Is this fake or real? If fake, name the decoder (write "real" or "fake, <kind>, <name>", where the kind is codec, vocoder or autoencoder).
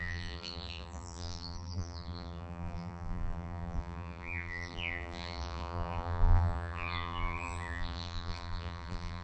fake, vocoder, BigVGAN v2